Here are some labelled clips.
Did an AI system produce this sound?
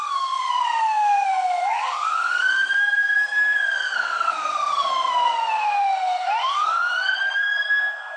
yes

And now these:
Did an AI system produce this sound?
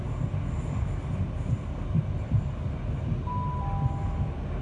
no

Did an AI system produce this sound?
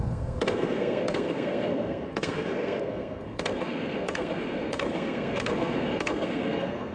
yes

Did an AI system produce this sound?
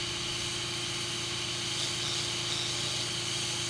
no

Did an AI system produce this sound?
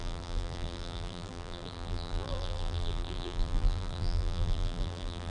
yes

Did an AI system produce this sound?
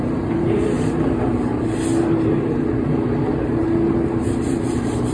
yes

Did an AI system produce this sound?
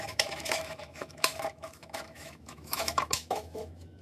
yes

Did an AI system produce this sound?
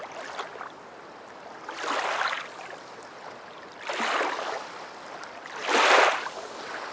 no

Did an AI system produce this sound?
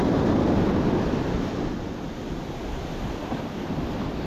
no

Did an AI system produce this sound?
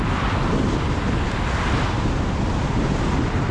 no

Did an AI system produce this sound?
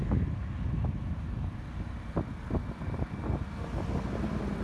no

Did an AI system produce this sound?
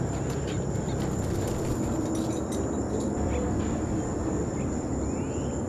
no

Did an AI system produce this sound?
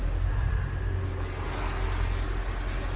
no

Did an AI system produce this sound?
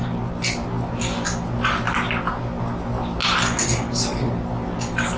no